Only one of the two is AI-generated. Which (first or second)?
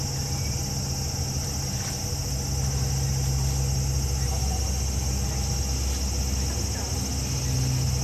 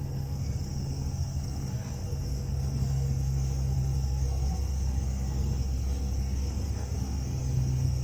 second